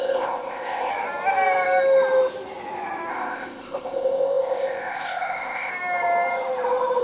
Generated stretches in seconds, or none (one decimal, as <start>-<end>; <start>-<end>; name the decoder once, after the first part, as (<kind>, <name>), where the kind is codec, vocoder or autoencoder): 0.0-0.9 (codec, ZipCodec); 3.1-5.7